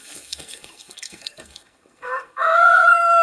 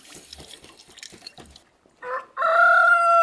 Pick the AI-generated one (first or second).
first